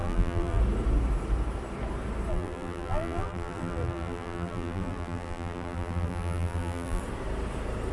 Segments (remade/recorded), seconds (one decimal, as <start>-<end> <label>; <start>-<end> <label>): 0.0-0.6 remade; 0.6-2.3 recorded; 2.3-7.0 remade; 7.0-7.9 recorded

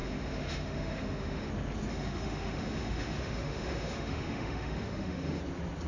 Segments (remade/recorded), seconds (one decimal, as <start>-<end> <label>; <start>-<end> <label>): 0.0-1.5 remade; 1.5-1.9 recorded; 1.9-5.4 remade; 5.4-5.9 recorded